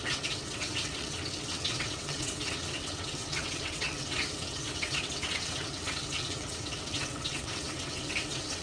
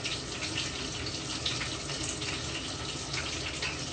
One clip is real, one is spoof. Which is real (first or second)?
second